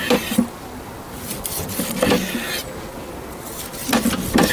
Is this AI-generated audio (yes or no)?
no